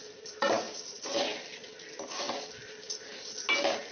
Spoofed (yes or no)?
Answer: no